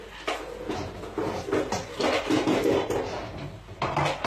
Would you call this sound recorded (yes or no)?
yes